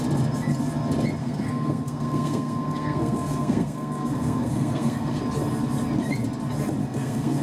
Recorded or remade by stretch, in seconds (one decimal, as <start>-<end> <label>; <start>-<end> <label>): 0.0-1.2 recorded; 1.2-5.2 remade; 5.2-6.8 recorded; 6.8-7.4 remade